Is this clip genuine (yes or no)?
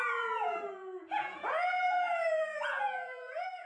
no